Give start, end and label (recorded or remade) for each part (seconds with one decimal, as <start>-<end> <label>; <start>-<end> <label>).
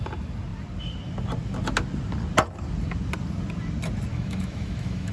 0.0-4.1 recorded; 4.1-5.1 remade